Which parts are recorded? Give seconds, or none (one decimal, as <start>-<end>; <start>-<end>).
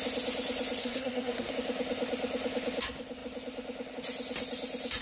0.0-0.8; 1.5-5.0